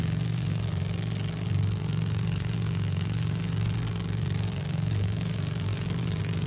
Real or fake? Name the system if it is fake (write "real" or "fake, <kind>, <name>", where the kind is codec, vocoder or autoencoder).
fake, vocoder, BigVGAN v2